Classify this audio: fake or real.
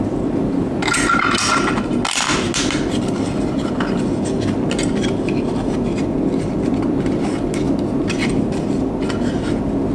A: real